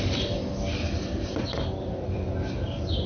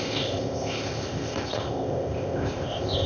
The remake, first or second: second